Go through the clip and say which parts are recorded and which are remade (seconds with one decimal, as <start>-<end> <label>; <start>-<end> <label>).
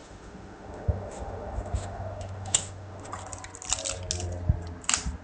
0.0-3.1 remade; 3.1-5.2 recorded